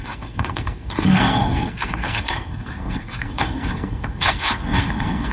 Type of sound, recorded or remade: remade